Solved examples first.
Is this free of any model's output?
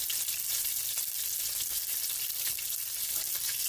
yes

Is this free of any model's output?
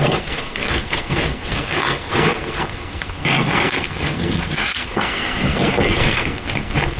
no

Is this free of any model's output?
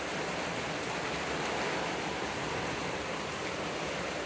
yes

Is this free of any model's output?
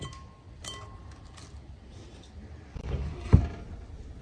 yes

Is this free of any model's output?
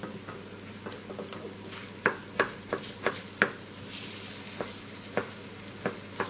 yes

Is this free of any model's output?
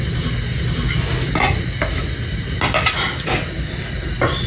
yes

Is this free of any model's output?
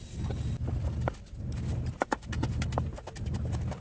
yes